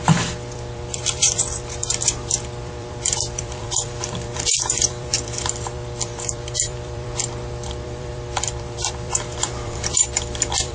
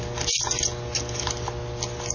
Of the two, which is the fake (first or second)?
first